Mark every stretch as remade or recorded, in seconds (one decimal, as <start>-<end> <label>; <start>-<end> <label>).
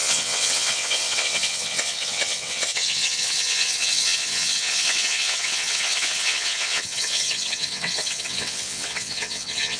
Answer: 0.0-9.8 remade